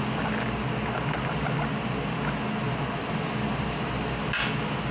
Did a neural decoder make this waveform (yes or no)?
no